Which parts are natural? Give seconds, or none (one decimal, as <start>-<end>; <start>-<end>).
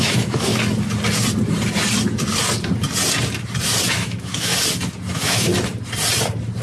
0.5-3.9; 4.5-5.1; 5.5-6.6